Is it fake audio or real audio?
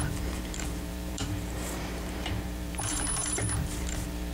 fake